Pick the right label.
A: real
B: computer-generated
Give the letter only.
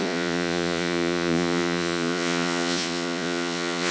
B